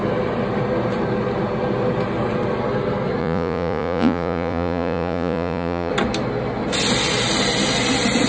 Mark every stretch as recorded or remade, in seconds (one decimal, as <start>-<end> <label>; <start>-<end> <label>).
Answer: 0.0-3.2 recorded; 3.2-5.9 remade; 5.9-8.3 recorded

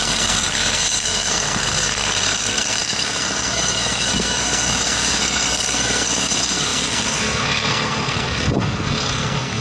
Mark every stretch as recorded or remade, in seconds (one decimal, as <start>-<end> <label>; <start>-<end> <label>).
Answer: 0.0-9.6 remade

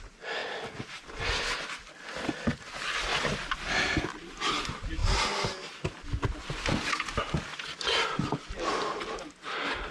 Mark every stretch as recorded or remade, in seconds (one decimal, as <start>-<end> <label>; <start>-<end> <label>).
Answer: 0.0-9.9 recorded

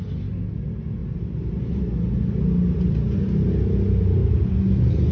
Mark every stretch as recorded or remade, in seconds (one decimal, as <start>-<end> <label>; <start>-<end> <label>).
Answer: 0.0-5.1 recorded

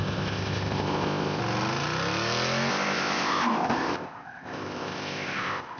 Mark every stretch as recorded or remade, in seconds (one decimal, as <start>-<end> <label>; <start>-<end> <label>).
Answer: 0.0-1.4 remade; 1.4-2.7 recorded; 2.7-5.8 remade

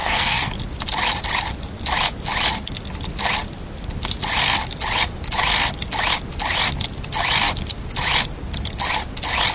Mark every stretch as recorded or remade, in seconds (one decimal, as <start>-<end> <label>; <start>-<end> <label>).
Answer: 0.0-0.5 remade; 0.5-9.5 recorded

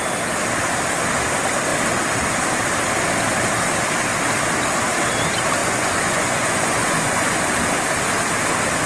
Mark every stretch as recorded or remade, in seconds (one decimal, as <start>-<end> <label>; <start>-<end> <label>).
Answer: 0.0-5.6 recorded; 5.6-7.5 remade; 7.5-8.9 recorded